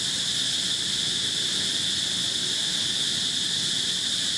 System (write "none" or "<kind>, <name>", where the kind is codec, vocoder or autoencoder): none